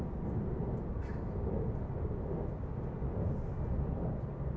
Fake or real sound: real